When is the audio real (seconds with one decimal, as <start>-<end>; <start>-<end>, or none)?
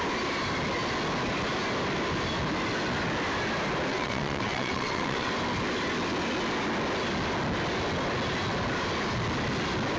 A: 0.0-3.9; 5.3-10.0